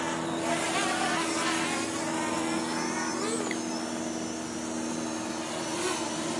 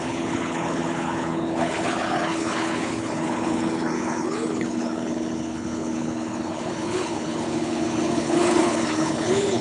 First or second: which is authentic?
first